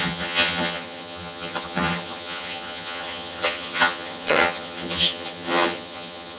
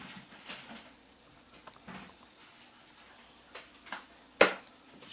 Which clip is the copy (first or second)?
first